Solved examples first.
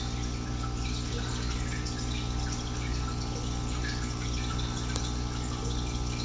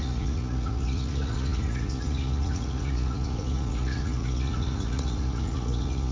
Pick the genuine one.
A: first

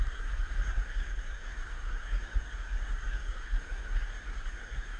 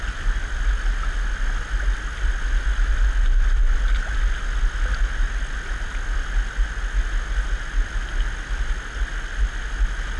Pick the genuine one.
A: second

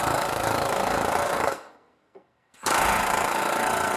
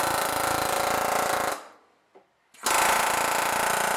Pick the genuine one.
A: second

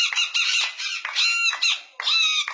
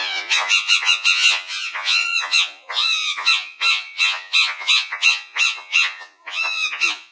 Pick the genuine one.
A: first